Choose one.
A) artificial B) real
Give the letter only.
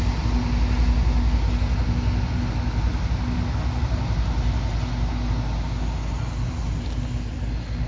B